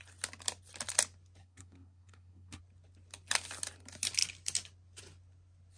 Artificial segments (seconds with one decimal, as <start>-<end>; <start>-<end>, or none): 1.4-2.6